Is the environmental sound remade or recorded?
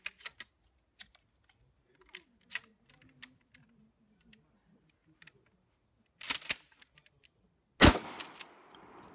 recorded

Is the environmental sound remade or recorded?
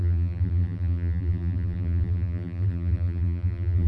remade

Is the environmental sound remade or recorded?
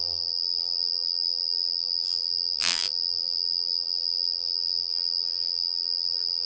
remade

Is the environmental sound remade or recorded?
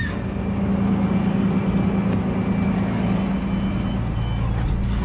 recorded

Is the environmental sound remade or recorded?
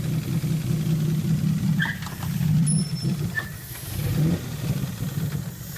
recorded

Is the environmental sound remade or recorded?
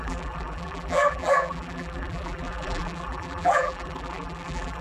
remade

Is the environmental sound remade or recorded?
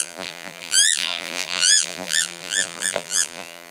remade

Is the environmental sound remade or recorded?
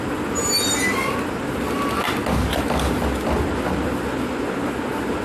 recorded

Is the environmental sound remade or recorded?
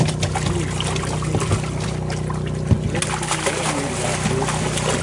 recorded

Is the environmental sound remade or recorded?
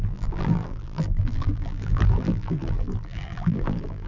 remade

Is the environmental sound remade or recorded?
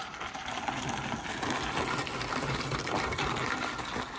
recorded